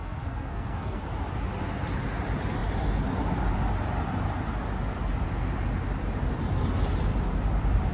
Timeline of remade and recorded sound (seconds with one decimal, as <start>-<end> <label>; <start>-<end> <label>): 0.0-1.0 remade; 1.0-7.9 recorded